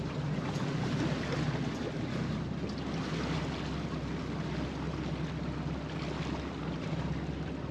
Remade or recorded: recorded